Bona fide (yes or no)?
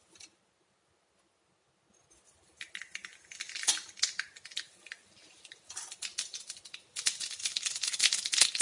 yes